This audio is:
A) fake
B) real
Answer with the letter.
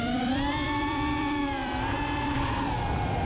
A